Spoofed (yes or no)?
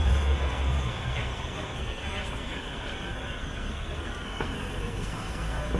yes